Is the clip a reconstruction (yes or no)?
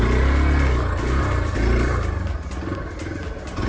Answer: no